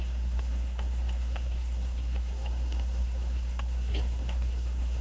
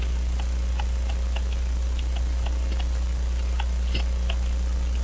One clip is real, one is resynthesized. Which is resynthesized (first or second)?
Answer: first